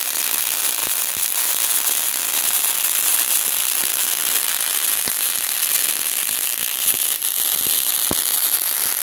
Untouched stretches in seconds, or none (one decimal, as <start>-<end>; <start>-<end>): 0.0-9.0